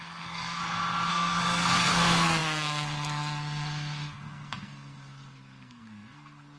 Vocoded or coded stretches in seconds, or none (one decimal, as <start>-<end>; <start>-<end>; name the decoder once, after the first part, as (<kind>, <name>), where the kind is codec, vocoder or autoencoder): 0.0-0.6 (codec, SNAC); 1.1-6.6